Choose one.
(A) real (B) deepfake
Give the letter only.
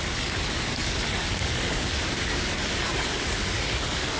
B